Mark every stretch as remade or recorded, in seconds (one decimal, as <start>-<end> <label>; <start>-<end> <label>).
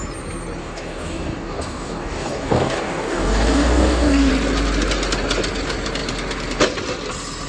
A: 0.0-0.6 recorded; 0.6-4.3 remade; 4.3-7.5 recorded